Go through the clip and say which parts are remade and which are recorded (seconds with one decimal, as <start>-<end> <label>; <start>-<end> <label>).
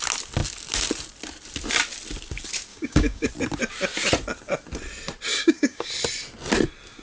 0.0-2.7 recorded; 2.7-3.3 remade; 3.3-5.3 recorded; 5.3-5.9 remade; 5.9-7.0 recorded